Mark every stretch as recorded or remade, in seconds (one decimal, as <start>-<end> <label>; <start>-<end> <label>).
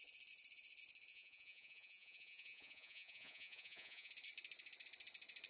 0.0-1.1 recorded; 1.1-4.1 remade; 4.1-5.5 recorded